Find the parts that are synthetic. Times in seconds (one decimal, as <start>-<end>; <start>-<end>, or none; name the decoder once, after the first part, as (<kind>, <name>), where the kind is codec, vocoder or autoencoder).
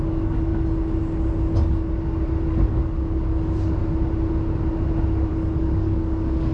0.0-0.5 (codec, DAC); 2.5-3.8; 5.3-6.5